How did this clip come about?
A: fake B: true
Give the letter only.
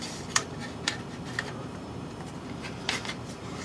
A